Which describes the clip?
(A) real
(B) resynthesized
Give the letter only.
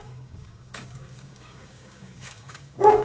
B